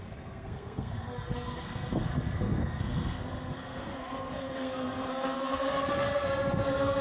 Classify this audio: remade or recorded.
remade